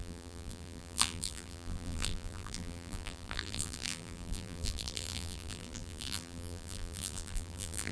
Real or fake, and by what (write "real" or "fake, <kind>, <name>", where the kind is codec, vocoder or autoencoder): fake, vocoder, BigVGAN v2